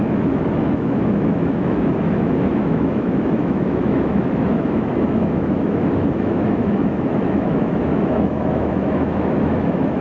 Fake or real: fake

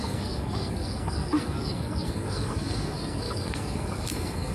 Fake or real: fake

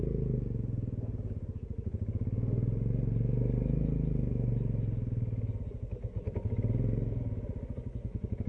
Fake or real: real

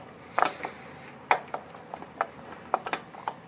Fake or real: real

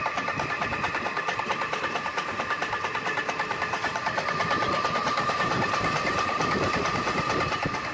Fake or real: real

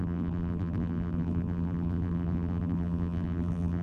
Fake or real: fake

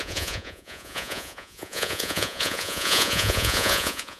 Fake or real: fake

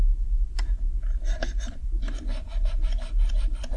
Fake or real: fake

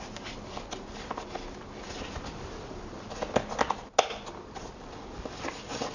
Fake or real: real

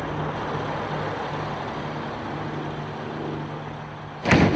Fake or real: real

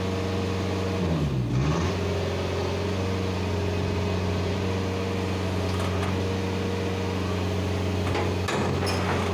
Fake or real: real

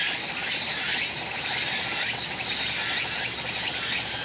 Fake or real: real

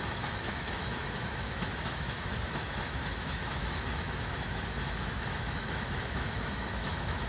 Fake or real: fake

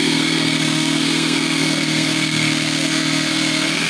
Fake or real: fake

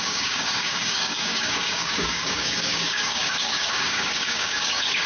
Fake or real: fake